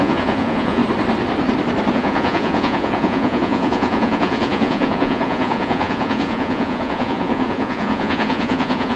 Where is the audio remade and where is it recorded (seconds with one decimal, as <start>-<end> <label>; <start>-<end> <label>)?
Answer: 0.0-0.8 remade; 0.8-1.9 recorded; 1.9-9.0 remade